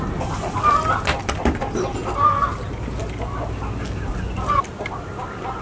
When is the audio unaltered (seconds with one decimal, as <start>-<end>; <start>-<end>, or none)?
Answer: 0.0-5.6